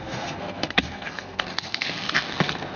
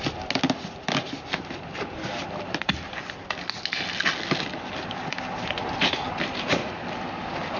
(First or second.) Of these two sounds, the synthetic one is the first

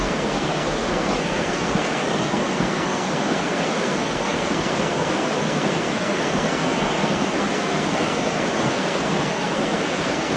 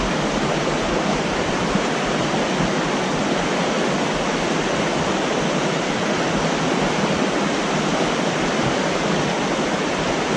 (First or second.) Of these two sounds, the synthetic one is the first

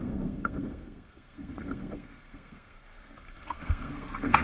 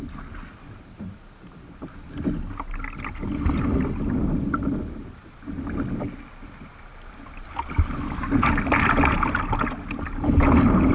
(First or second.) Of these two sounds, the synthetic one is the first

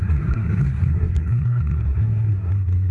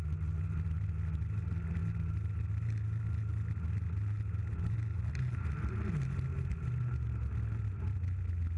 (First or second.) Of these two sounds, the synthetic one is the first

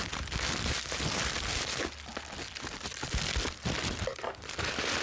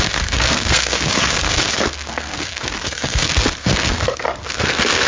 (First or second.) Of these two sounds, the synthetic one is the second